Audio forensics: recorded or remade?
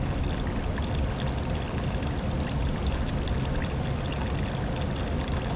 recorded